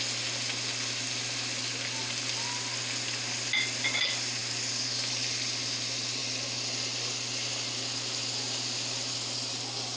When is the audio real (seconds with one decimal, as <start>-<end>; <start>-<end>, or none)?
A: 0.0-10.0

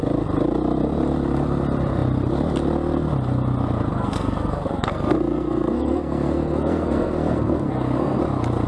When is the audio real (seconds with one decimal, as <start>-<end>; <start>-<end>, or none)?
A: 0.0-3.9; 8.2-8.7

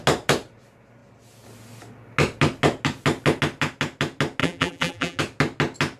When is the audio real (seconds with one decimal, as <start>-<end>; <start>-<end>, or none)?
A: 0.0-4.4; 5.2-6.0

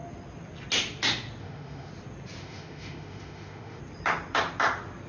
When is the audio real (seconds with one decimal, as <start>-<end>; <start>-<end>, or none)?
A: 0.0-1.4; 1.9-2.4; 3.8-5.1